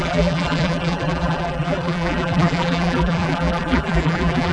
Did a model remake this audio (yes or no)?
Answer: yes